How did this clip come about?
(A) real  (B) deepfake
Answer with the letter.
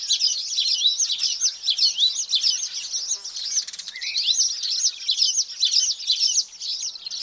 A